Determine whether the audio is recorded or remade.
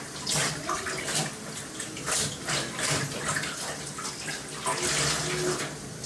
recorded